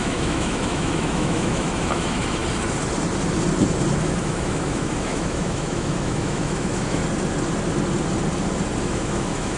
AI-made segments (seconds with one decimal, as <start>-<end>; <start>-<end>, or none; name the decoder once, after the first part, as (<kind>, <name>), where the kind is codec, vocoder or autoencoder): 0.0-2.4 (autoencoder, DAC-VAE); 4.2-7.0; 8.8-9.6